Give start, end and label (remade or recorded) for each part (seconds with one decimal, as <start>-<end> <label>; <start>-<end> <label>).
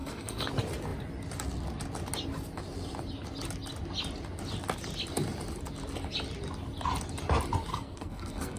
0.0-0.5 remade; 0.5-7.7 recorded; 7.7-8.6 remade